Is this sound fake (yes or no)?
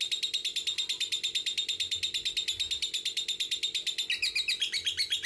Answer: no